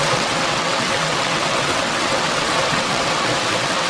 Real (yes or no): no